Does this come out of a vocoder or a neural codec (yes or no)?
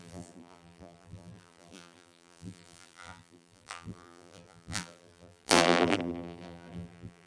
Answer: yes